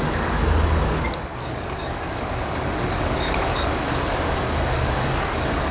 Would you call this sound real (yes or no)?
no